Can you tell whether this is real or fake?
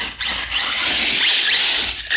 real